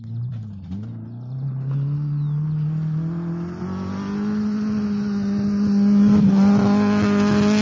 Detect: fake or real real